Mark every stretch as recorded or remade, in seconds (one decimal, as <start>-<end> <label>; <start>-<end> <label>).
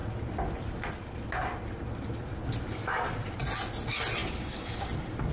0.0-0.9 remade; 0.9-2.2 recorded; 2.2-3.4 remade; 3.4-4.2 recorded; 4.2-5.3 remade